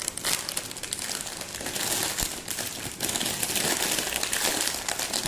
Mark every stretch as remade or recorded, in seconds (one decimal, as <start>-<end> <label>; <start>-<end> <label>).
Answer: 0.0-5.3 recorded